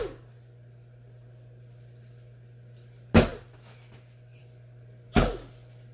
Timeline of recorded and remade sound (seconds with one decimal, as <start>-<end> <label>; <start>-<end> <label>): 0.0-5.9 recorded